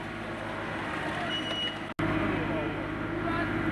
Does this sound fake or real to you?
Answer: real